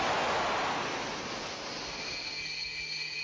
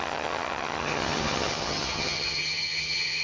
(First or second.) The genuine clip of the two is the first